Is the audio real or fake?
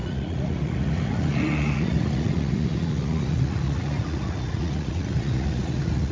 fake